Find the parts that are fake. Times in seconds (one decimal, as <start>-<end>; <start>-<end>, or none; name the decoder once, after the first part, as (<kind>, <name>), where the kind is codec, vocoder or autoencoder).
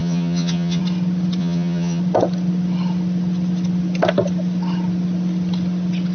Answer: 0.0-0.8 (vocoder, Vocos); 1.4-2.0